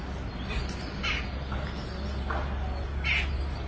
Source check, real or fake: real